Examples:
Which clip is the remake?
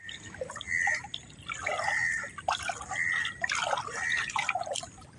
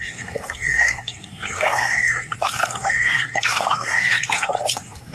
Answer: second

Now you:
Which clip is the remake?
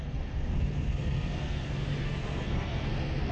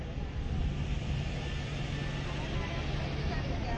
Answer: first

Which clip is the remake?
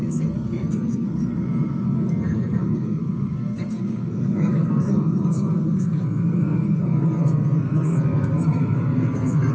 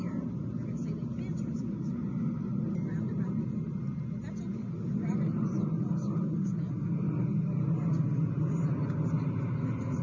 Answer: first